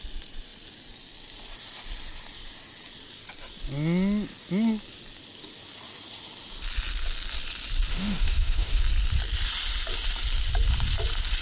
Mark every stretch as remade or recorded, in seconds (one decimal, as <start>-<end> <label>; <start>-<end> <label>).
0.0-7.9 recorded; 7.9-8.8 remade; 8.8-11.4 recorded